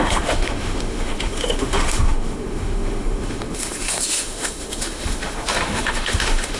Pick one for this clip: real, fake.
fake